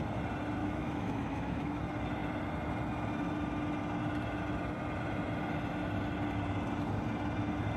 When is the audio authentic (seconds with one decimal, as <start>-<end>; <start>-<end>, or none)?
0.0-0.6; 1.8-7.8

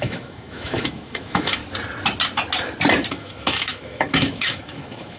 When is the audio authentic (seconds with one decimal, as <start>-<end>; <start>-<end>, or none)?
1.6-3.1

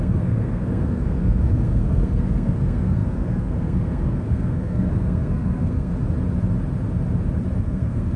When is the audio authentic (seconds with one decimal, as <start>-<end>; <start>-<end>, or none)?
5.9-7.6

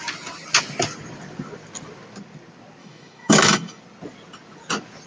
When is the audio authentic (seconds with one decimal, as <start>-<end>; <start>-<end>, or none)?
0.0-2.8; 3.8-5.1